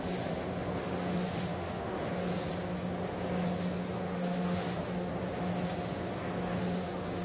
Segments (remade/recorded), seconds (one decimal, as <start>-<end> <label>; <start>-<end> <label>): 0.0-2.3 remade; 2.3-3.9 recorded; 3.9-5.1 remade; 5.1-6.6 recorded; 6.6-7.2 remade